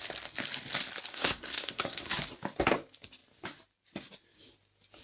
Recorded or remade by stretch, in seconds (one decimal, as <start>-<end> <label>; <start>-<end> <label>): 0.0-1.1 recorded; 1.1-2.1 remade; 2.1-5.0 recorded